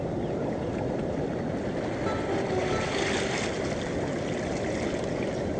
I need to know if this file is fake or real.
real